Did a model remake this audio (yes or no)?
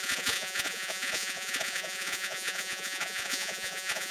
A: yes